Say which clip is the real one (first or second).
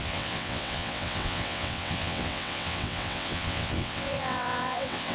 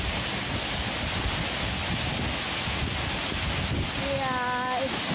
second